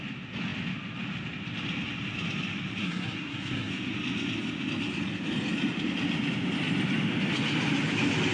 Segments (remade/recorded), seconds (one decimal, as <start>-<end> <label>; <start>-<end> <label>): 0.0-2.8 recorded; 2.8-3.7 remade; 3.7-8.3 recorded